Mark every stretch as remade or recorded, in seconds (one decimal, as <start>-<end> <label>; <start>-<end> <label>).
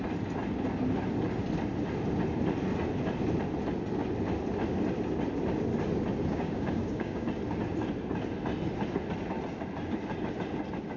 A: 0.0-6.3 recorded; 6.3-7.3 remade; 7.3-11.0 recorded